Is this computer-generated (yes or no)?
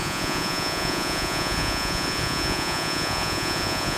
yes